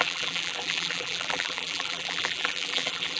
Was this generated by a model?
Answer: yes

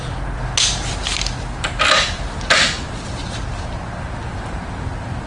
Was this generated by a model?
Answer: no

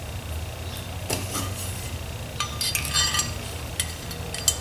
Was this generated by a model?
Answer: no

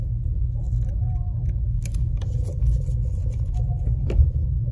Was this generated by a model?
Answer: no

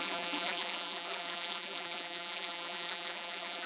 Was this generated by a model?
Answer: yes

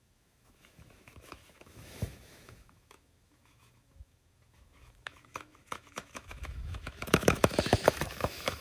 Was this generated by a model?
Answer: yes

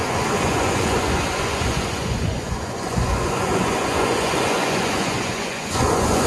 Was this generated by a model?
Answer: yes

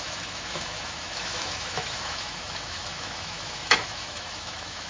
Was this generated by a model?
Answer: yes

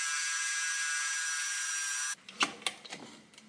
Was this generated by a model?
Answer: no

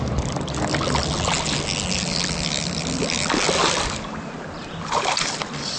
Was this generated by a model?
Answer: no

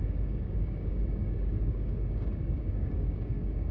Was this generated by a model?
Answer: yes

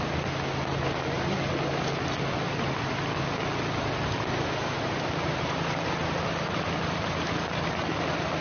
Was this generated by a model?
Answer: no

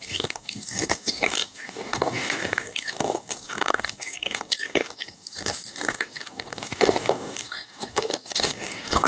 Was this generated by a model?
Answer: yes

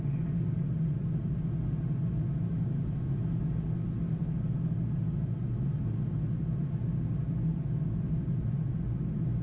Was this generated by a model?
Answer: no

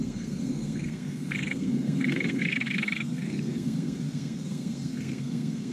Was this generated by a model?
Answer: yes